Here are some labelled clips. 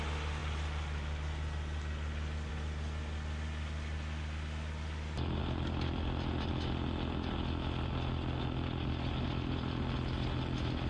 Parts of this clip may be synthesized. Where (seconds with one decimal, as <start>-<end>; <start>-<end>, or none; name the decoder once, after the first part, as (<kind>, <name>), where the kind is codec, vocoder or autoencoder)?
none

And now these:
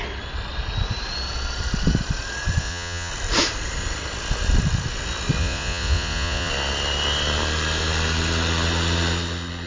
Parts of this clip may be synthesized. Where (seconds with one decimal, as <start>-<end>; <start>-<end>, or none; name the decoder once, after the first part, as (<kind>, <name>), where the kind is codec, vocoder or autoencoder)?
2.6-3.1 (vocoder, Vocos); 5.4-6.5

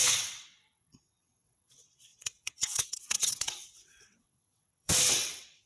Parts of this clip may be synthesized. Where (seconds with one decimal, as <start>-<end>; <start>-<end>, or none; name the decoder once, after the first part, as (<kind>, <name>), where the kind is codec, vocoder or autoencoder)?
0.0-5.7 (vocoder, WaveNeXt)

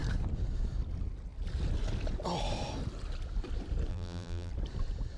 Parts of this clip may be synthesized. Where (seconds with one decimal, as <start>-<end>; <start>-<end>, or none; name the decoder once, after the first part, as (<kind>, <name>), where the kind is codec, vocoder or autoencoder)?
3.9-4.5 (vocoder, BigVGAN v2)

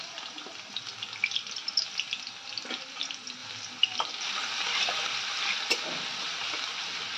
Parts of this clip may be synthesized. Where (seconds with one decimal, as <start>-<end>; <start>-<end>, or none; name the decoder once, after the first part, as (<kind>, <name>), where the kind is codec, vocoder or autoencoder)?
none